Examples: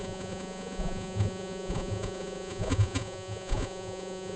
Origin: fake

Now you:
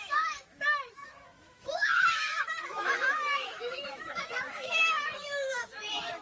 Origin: fake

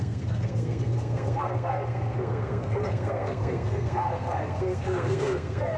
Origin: fake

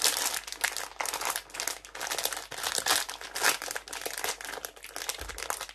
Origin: real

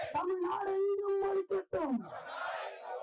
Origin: real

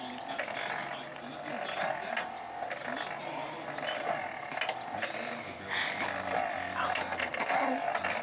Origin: real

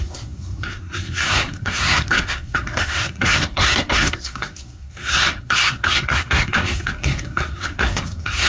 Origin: fake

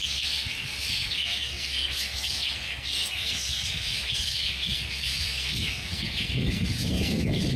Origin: fake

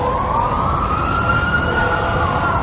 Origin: fake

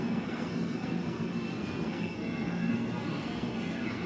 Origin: fake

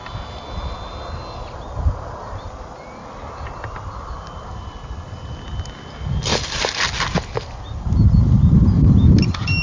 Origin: real